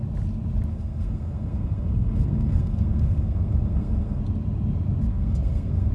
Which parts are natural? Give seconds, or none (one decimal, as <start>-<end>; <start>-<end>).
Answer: 0.0-0.7; 4.2-5.1